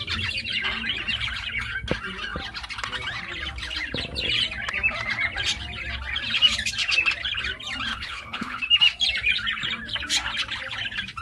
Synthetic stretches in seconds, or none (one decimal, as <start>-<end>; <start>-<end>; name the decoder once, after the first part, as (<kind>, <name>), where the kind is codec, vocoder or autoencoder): 7.9-8.6 (codec, HILCodec)